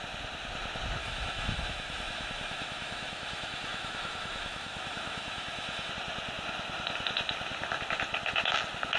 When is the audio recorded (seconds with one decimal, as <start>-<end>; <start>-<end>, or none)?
0.0-1.0; 5.9-9.0